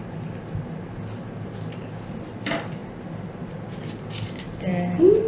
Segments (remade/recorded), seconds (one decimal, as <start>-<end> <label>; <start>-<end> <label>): 0.0-5.3 recorded